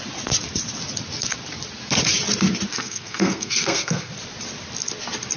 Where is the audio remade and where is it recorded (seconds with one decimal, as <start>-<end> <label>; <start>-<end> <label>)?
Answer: 0.0-2.7 recorded; 2.7-4.1 remade; 4.1-5.4 recorded

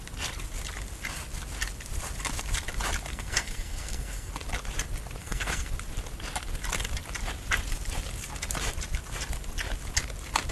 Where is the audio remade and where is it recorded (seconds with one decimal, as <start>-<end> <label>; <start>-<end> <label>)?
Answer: 0.0-3.1 recorded; 3.1-4.3 remade; 4.3-5.2 recorded; 5.2-5.7 remade; 5.7-10.5 recorded